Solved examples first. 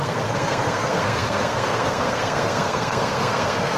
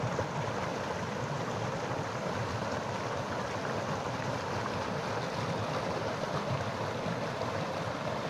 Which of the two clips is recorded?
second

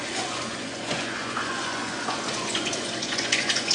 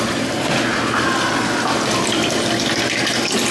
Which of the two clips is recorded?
second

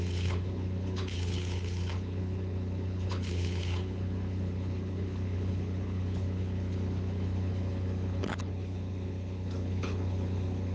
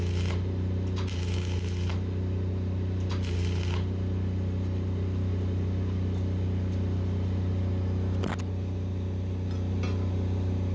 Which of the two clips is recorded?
second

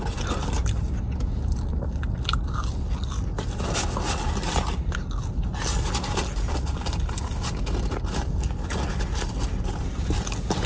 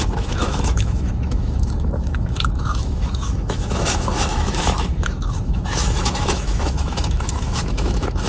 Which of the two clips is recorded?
first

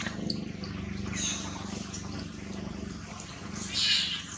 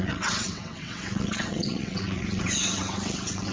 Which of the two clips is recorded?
first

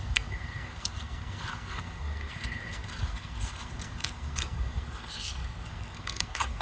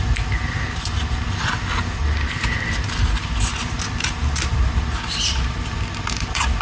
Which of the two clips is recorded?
second